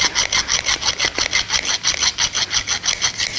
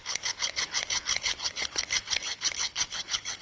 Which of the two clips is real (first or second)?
first